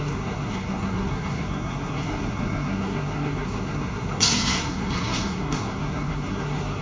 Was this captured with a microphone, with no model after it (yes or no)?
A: no